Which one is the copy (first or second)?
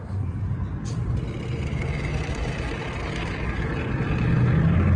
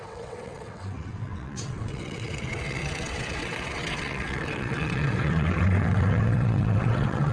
second